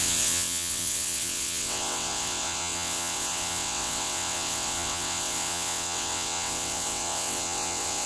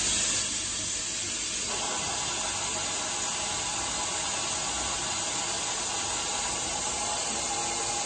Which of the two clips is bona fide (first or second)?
second